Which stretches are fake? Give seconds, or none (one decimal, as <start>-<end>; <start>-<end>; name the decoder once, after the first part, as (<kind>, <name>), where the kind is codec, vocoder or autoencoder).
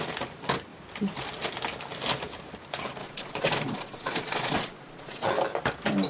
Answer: 3.0-5.3 (vocoder, Vocos)